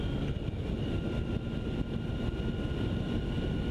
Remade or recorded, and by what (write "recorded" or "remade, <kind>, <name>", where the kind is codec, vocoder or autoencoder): recorded